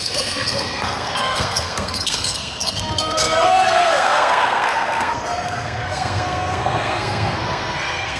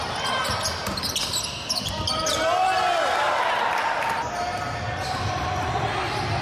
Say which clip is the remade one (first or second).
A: first